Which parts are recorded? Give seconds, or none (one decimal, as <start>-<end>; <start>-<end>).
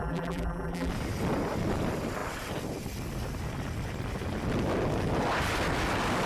0.9-6.3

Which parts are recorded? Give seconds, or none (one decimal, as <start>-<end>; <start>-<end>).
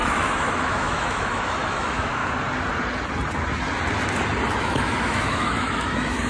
2.2-4.6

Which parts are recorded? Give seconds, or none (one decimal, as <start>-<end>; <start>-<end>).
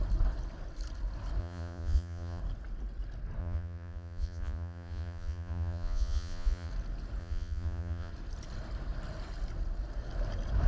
0.0-1.4; 2.4-3.4; 6.7-7.2; 8.1-10.7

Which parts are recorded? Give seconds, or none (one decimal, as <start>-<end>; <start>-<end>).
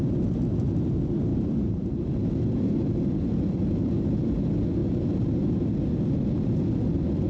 0.0-1.3; 2.3-7.3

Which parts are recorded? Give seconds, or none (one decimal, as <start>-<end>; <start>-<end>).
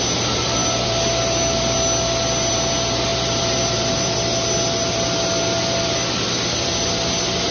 0.0-7.5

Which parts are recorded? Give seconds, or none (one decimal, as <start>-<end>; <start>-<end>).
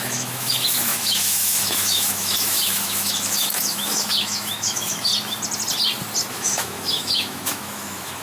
5.1-6.3